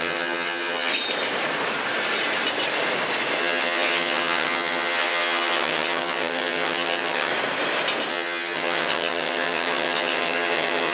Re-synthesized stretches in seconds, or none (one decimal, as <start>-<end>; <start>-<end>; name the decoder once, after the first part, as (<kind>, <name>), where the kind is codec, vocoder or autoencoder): 0.0-0.9 (vocoder, HiFi-GAN); 3.4-7.3; 8.1-10.9